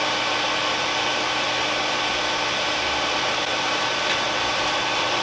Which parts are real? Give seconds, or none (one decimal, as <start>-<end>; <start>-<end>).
0.0-5.2